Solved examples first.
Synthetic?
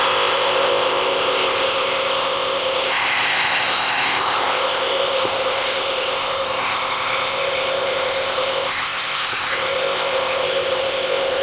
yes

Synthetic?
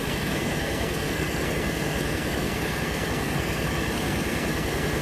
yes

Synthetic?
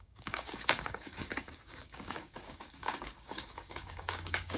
yes